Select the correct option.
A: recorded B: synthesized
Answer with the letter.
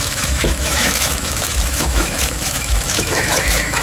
B